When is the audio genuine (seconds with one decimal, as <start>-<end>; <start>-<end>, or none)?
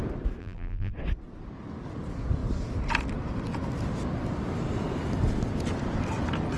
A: 0.0-0.4; 0.9-6.6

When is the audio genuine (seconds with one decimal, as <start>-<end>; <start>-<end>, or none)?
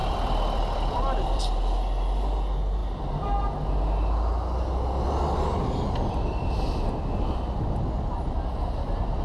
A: 1.4-9.2